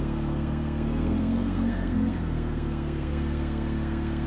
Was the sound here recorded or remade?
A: remade